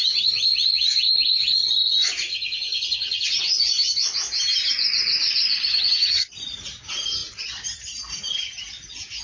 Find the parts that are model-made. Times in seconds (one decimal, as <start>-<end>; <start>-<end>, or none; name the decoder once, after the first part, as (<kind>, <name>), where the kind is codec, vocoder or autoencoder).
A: 2.3-3.4 (vocoder, HiFi-GAN); 5.7-6.3